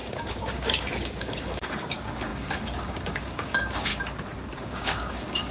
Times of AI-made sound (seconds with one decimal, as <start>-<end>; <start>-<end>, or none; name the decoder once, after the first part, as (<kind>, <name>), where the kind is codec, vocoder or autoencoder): 0.0-3.9 (codec, DAC); 4.6-5.5